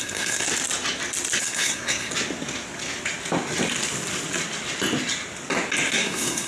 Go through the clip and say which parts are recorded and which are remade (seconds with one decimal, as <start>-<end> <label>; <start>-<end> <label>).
0.0-0.5 remade; 0.5-1.4 recorded; 1.4-2.1 remade; 2.1-5.9 recorded; 5.9-6.5 remade